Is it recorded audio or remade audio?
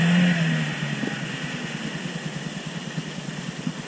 recorded